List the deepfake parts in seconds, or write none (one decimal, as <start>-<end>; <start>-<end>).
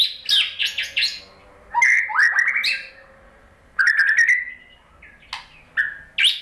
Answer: 0.6-1.2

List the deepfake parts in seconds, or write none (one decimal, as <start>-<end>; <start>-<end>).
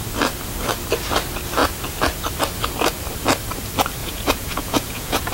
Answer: 4.0-5.3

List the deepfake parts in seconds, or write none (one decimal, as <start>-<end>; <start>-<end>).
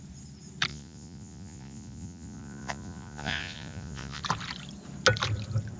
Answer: 0.7-4.2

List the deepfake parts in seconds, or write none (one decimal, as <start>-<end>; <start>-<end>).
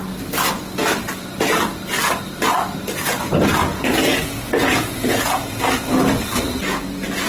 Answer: 3.7-5.6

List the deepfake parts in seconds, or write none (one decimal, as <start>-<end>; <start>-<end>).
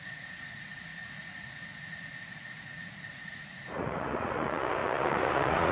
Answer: 0.0-5.7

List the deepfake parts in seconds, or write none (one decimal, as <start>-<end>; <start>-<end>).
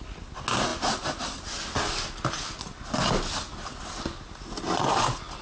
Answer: none